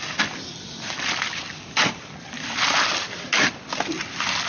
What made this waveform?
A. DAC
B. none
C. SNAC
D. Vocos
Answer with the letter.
B